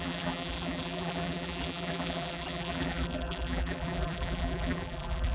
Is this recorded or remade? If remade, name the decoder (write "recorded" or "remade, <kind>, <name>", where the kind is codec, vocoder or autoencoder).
remade, vocoder, BigVGAN v2